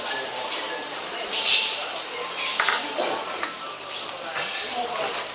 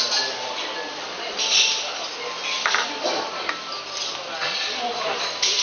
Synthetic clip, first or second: first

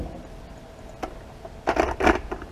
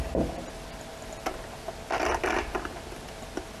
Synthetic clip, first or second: first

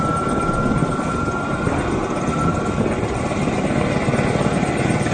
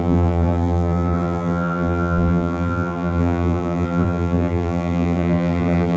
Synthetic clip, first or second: second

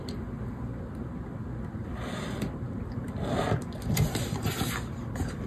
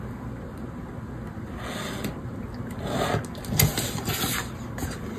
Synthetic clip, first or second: first